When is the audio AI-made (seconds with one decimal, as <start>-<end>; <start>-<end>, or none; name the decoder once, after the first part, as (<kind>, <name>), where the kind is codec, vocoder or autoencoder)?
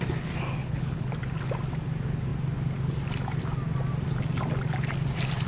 0.6-1.1 (codec, HILCodec)